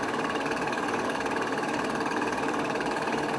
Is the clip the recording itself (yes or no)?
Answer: no